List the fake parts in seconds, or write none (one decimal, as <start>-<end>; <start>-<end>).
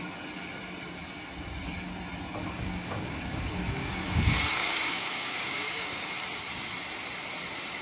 2.4-6.2